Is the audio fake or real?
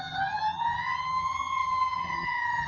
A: fake